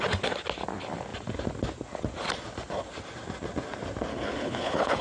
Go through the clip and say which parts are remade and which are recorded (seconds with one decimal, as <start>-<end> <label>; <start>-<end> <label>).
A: 0.0-4.1 recorded; 4.1-5.0 remade